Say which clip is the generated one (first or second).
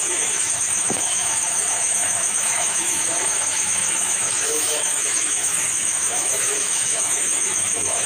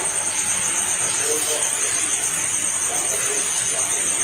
first